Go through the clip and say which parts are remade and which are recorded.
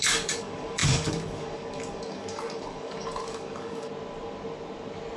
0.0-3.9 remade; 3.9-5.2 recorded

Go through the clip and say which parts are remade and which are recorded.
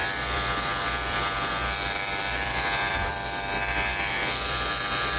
0.0-5.2 remade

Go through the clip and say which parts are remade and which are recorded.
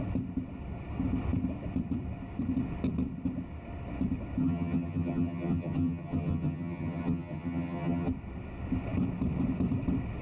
0.0-4.4 recorded; 4.4-8.1 remade; 8.1-10.2 recorded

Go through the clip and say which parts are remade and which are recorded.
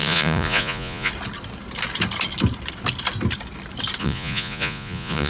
0.0-1.1 remade; 1.1-4.0 recorded; 4.0-5.3 remade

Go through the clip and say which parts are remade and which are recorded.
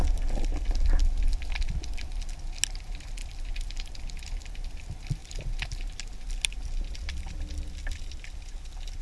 0.0-9.0 recorded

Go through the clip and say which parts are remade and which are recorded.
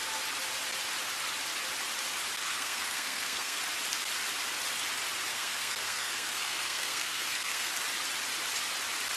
0.0-2.4 recorded; 2.4-3.6 remade; 3.6-5.3 recorded; 5.3-7.7 remade; 7.7-9.2 recorded